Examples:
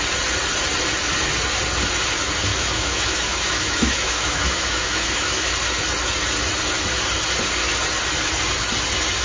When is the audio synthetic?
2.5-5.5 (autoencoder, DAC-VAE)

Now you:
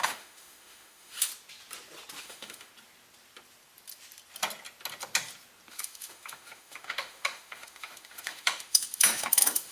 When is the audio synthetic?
0.0-1.3 (autoencoder, DAC-VAE); 2.2-2.7; 5.7-9.7

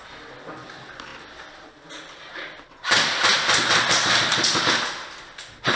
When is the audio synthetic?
none

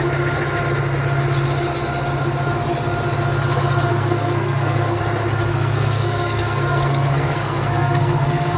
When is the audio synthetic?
3.9-5.0 (codec, SNAC); 5.5-8.6

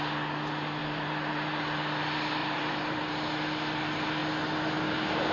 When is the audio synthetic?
0.8-1.6 (vocoder, BigVGAN v2); 2.4-3.1

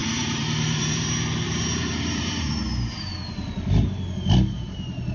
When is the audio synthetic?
0.0-3.1 (vocoder, BigVGAN v2)

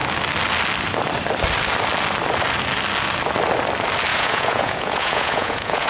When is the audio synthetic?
4.1-5.9 (vocoder, Vocos)